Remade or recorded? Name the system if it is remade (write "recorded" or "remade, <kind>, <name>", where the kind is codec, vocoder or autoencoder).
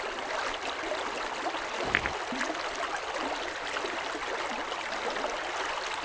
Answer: recorded